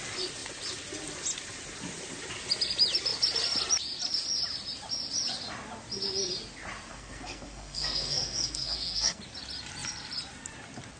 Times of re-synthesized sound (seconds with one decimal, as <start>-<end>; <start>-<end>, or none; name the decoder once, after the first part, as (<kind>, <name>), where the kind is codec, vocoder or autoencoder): 6.9-9.2 (codec, SNAC)

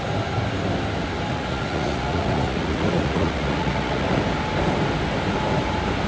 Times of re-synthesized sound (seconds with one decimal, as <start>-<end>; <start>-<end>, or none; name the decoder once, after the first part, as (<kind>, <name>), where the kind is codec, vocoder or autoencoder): 1.3-4.2 (vocoder, Vocos)

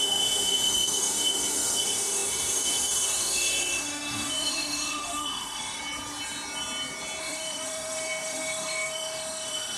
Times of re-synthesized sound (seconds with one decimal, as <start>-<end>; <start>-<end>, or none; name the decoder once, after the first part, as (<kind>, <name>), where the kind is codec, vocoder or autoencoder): 0.0-5.8 (autoencoder, DAC-VAE); 7.2-9.8

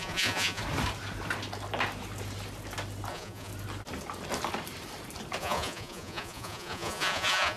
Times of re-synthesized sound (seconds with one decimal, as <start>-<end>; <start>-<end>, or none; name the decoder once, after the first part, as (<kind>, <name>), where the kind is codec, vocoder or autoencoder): 0.0-0.6 (vocoder, Vocos); 3.1-3.5; 5.4-7.6

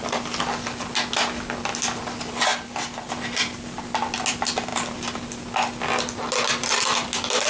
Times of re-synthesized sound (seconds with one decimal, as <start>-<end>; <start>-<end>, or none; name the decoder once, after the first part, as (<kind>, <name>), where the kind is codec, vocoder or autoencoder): none

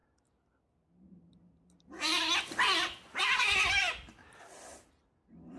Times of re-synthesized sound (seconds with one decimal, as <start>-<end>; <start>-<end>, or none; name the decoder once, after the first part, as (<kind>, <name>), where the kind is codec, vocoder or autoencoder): none

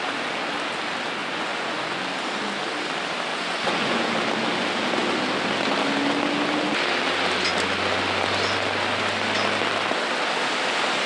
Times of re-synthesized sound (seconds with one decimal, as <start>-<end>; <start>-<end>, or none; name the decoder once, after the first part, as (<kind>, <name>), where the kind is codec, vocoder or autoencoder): 1.2-2.0 (vocoder, Vocos); 3.3-4.1

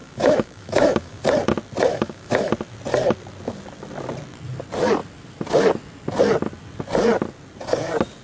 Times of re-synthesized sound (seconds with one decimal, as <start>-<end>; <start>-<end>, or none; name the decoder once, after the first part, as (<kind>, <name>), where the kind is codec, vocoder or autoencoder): 0.0-1.2 (autoencoder, DAC-VAE); 1.9-2.5